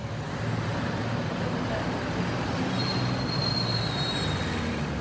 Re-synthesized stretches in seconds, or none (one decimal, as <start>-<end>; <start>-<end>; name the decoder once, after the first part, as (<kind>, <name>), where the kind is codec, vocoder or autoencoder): none